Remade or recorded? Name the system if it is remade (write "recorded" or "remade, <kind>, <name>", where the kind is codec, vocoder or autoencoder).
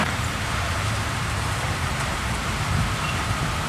remade, vocoder, BigVGAN v2